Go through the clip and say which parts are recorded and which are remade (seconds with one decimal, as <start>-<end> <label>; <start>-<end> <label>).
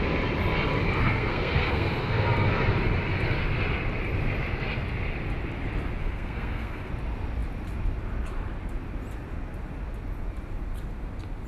0.0-1.0 recorded; 1.0-2.6 remade; 2.6-6.0 recorded; 6.0-6.9 remade; 6.9-11.5 recorded